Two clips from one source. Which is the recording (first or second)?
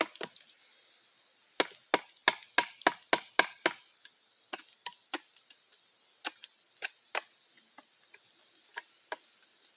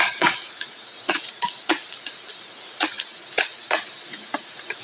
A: first